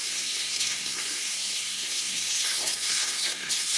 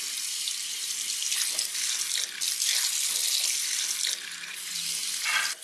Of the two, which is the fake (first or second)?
first